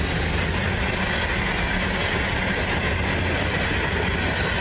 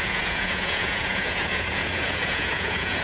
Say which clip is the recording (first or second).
first